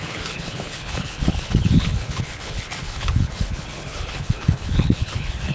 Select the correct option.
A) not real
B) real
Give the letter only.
A